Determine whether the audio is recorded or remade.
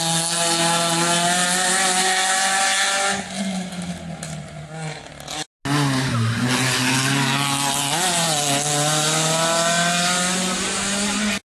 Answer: recorded